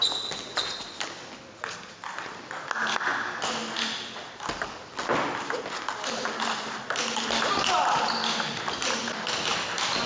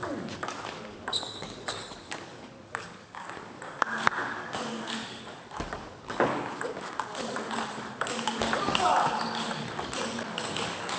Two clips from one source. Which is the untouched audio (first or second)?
first